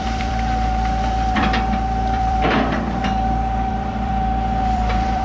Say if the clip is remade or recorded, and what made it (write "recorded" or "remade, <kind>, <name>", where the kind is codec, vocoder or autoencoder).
remade, vocoder, BigVGAN v2